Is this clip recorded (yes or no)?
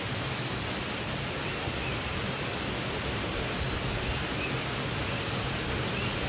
yes